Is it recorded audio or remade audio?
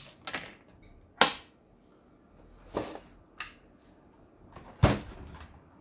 recorded